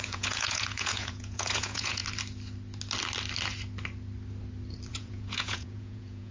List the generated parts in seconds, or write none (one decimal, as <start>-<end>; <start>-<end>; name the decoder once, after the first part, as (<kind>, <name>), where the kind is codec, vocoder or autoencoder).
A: 0.0-2.0 (vocoder, Vocos); 4.9-6.3